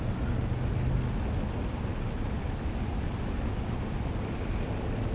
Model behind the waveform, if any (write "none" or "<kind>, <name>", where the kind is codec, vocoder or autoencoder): none